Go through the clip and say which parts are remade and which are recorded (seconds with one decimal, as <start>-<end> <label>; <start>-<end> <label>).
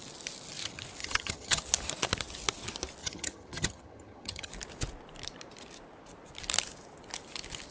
0.0-1.0 recorded; 1.0-1.6 remade; 1.6-3.0 recorded; 3.0-4.5 remade; 4.5-7.7 recorded